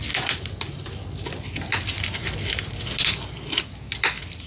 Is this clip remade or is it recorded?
recorded